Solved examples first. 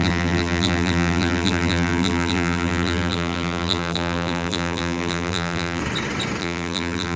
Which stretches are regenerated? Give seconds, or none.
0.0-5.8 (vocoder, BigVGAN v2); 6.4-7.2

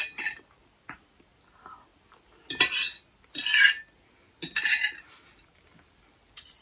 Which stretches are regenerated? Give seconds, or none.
none

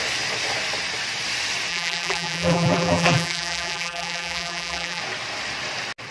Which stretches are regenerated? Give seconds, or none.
1.7-5.0 (vocoder, BigVGAN v2)

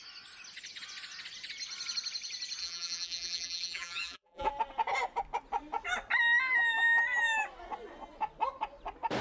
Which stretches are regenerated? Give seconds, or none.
2.6-4.5 (vocoder, BigVGAN v2)